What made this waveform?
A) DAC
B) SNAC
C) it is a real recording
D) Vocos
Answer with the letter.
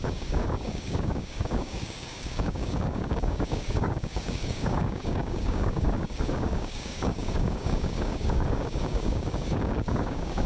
A